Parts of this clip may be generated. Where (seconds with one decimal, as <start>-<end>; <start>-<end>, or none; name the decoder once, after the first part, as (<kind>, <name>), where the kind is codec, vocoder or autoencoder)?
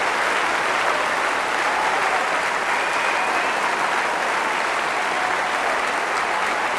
none